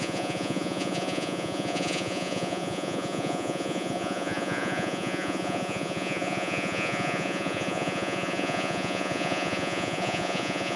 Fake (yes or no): yes